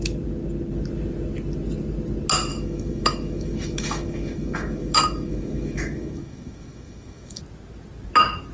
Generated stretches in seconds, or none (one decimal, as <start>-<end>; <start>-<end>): 2.5-7.4